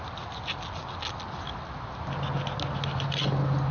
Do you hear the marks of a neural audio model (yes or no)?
no